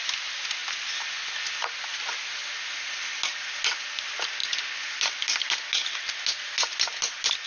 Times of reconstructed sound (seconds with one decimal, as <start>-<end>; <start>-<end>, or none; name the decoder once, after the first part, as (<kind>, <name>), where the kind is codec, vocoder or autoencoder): none